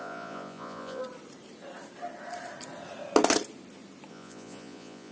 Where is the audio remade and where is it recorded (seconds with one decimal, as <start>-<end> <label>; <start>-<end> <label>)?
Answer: 0.0-1.0 remade; 1.0-4.1 recorded; 4.1-5.1 remade